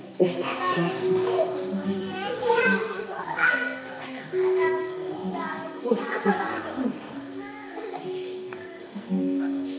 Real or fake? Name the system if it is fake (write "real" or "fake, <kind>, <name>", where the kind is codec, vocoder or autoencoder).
fake, codec, SNAC